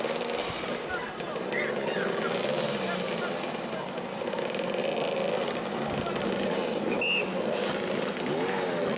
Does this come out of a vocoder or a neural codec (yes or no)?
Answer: no